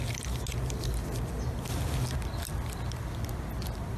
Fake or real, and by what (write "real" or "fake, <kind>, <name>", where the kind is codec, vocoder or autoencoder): real